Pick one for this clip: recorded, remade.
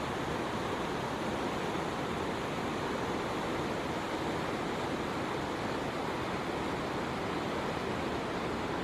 recorded